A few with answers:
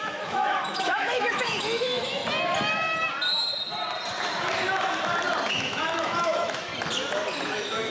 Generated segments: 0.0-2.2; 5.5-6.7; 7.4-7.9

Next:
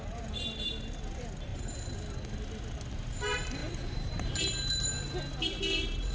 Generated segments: 3.6-4.4